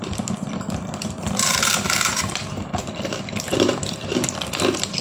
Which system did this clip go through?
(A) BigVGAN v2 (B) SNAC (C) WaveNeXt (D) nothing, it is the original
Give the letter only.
A